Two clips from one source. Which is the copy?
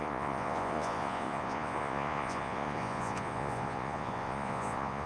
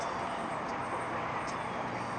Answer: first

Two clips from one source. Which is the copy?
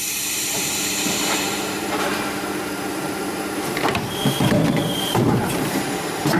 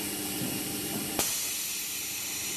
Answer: first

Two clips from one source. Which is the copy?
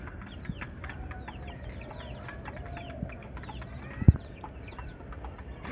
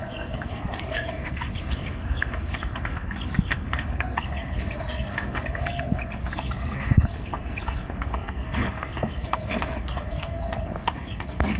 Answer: second